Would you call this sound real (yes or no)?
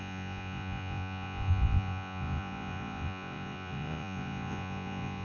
no